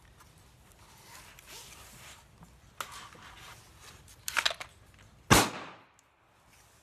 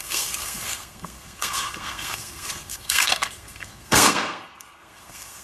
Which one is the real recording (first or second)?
first